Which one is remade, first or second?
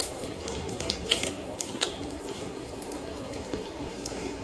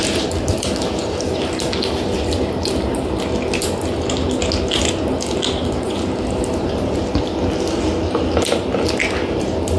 first